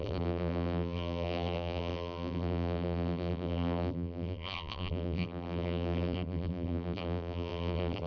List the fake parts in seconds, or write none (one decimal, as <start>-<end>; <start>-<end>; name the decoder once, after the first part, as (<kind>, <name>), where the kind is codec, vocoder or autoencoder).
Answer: 0.0-8.1 (vocoder, BigVGAN v2)